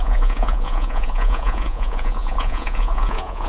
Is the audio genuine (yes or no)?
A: no